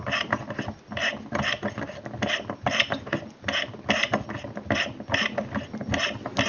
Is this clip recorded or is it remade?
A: recorded